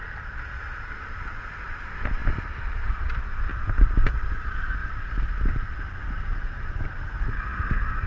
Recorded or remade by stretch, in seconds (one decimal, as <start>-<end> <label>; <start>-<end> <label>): 0.0-8.1 recorded